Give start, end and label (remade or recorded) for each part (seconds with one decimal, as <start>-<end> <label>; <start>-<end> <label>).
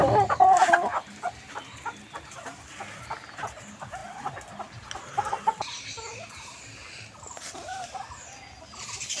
0.0-9.2 recorded